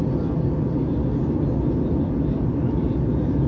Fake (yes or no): no